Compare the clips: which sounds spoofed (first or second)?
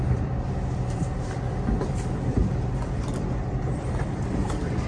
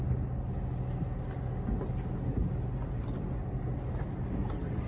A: first